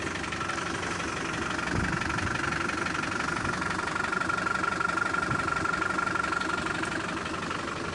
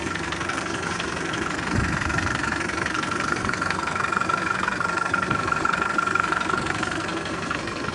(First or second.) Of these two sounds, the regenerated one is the second